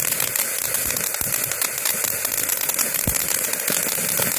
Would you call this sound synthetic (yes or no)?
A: no